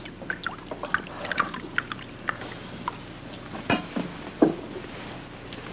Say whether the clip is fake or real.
real